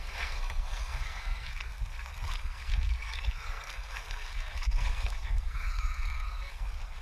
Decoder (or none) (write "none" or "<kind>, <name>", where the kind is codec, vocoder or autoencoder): codec, SNAC